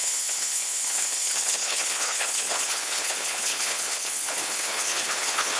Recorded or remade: remade